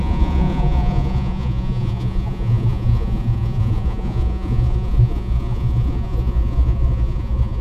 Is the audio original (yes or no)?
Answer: no